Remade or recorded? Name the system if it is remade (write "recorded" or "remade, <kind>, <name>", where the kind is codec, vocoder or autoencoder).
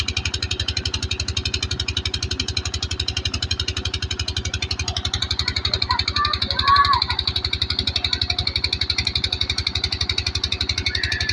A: recorded